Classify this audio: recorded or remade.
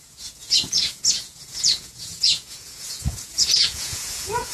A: remade